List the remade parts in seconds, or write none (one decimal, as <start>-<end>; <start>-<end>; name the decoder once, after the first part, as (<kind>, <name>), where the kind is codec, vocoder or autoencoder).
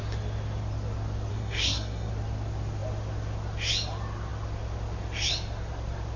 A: 1.3-2.1 (codec, SNAC)